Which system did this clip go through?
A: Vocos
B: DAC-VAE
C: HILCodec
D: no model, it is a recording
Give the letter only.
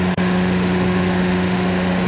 B